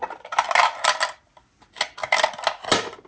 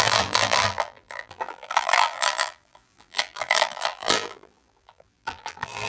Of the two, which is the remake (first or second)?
second